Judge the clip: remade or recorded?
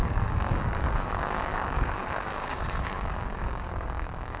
remade